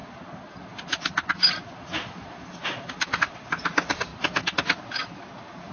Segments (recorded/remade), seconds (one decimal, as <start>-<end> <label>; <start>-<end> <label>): 0.0-5.7 recorded